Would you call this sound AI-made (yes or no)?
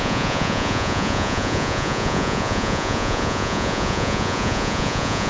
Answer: yes